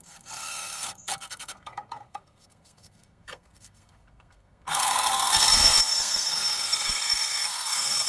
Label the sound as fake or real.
fake